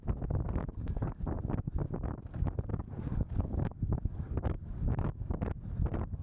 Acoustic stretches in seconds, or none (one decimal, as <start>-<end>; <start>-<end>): 0.0-0.6; 1.2-2.7; 5.3-6.2